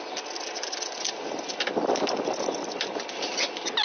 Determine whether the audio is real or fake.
real